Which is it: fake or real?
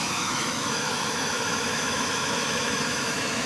fake